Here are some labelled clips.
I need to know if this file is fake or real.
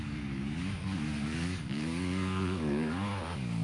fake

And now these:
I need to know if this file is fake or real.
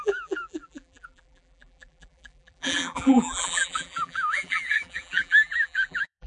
fake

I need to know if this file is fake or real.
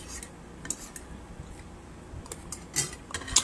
real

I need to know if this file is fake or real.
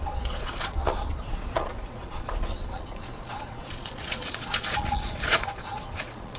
fake